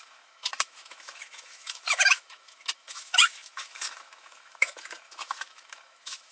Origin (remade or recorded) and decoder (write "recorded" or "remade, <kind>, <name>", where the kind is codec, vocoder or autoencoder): remade, autoencoder, DAC-VAE